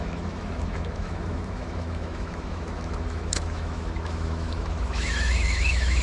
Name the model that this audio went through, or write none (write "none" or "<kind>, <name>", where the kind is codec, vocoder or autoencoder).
autoencoder, DAC-VAE